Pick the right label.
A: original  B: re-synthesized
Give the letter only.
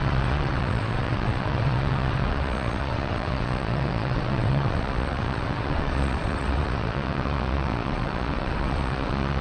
B